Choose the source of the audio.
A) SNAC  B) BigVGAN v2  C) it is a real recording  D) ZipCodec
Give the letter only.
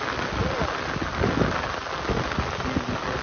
C